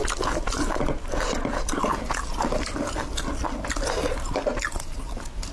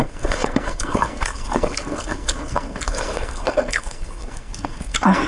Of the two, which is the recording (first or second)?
first